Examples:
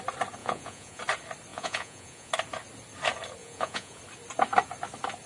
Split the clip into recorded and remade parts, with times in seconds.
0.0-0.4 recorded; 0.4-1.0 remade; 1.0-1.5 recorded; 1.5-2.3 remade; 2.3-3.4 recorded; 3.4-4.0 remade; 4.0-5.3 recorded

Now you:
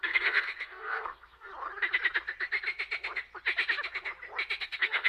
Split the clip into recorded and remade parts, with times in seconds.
0.0-1.5 remade; 1.5-4.6 recorded; 4.6-5.1 remade

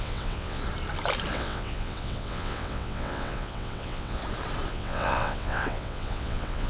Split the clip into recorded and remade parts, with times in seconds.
0.0-0.6 remade; 0.6-1.3 recorded; 1.3-4.2 remade; 4.2-4.7 recorded; 4.7-6.7 remade